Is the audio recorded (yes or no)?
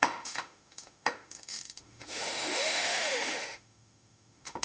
no